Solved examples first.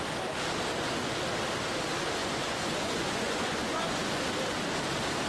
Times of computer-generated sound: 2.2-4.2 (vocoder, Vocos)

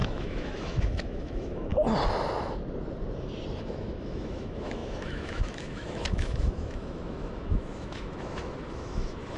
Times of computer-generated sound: 0.0-1.7 (autoencoder, DAC-VAE); 3.6-9.4

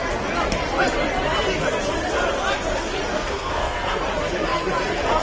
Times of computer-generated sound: 3.1-4.0 (codec, SNAC)

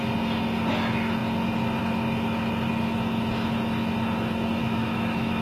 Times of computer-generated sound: 4.6-5.4 (autoencoder, DAC-VAE)

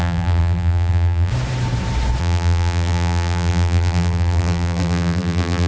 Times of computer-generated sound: 0.0-1.3 (vocoder, BigVGAN v2); 2.2-5.7

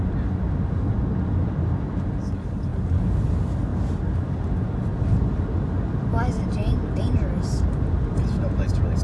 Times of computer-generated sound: none